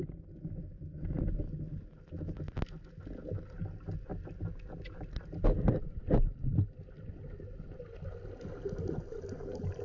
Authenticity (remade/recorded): recorded